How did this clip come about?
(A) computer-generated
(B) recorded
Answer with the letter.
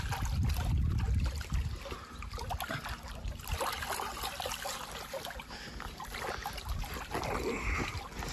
B